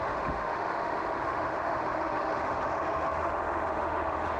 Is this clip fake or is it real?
fake